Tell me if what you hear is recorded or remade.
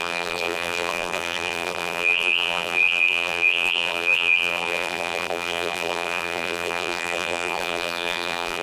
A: remade